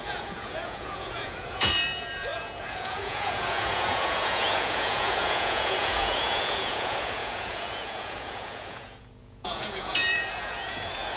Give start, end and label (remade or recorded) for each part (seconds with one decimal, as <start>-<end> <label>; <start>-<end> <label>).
0.0-11.2 remade